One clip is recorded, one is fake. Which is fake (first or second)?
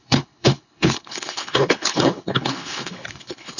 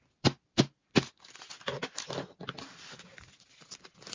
first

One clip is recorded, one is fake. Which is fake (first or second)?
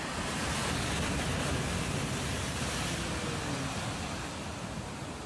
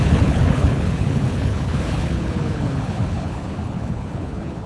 second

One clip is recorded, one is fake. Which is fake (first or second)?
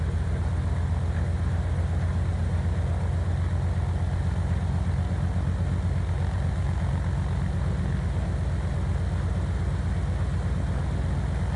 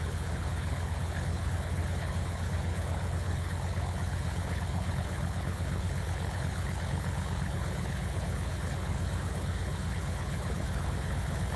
second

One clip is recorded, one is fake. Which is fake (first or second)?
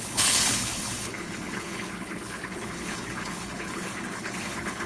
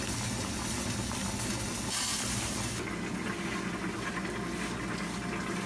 first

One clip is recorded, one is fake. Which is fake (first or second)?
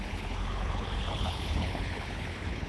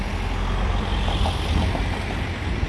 first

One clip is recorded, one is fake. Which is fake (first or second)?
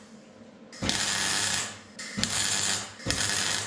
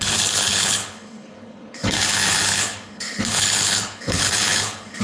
second